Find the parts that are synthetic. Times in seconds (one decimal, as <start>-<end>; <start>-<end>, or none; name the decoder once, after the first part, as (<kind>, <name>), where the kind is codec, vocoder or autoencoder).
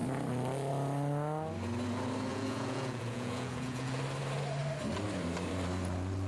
2.3-4.0 (vocoder, Vocos)